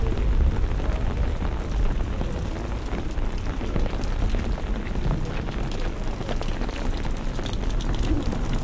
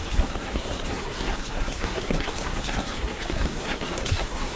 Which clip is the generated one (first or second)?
second